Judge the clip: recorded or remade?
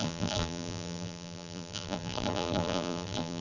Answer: remade